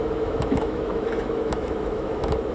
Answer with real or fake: fake